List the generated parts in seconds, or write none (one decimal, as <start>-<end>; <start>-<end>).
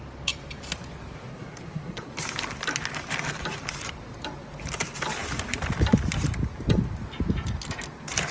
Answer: 1.3-2.1